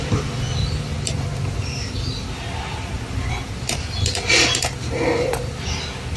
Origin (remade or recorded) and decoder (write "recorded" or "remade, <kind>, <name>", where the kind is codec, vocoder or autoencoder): remade, vocoder, BigVGAN v2